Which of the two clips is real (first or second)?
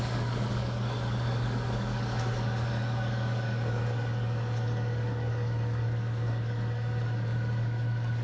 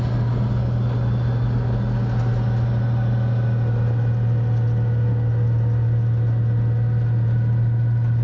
second